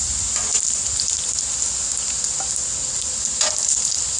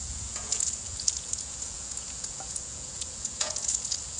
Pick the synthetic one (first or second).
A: second